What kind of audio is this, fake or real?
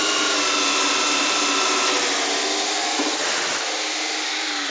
real